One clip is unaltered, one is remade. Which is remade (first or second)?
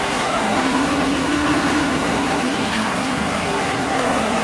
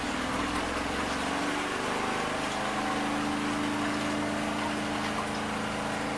first